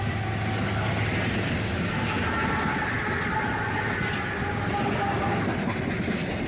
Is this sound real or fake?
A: real